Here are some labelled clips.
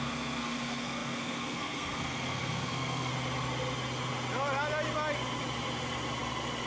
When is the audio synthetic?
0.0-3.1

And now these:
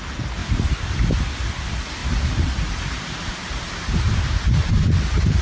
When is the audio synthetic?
2.0-4.7

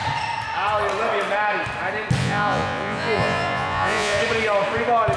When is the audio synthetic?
2.2-4.2

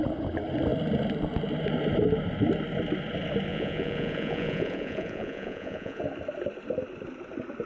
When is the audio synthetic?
3.5-6.0

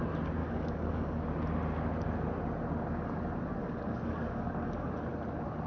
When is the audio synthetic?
0.4-1.2; 3.6-4.9

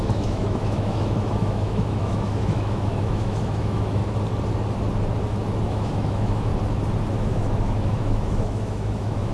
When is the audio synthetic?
0.0-4.0; 5.6-6.5; 7.1-9.3

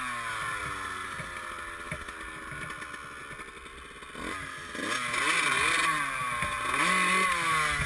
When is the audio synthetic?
none

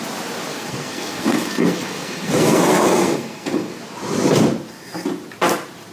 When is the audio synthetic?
0.5-3.8